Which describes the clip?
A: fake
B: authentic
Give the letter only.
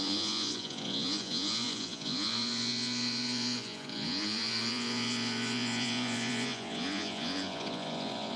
A